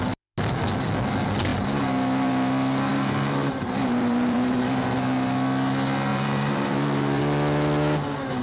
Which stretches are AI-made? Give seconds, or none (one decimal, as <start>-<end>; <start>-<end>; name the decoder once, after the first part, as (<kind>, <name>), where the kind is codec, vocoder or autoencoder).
2.9-4.9 (vocoder, BigVGAN v2); 6.1-7.2